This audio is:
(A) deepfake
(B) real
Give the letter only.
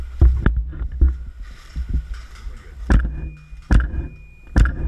B